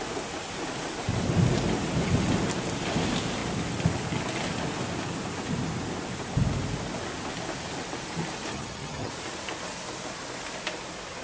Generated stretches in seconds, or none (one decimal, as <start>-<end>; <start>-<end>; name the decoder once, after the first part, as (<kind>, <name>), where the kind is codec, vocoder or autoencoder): 8.5-9.1 (vocoder, HiFi-GAN)